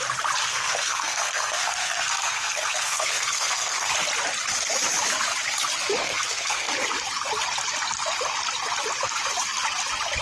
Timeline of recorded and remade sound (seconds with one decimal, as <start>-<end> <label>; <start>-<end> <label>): 0.0-0.4 recorded; 0.4-3.9 remade; 3.9-6.0 recorded; 6.0-6.7 remade; 6.7-10.2 recorded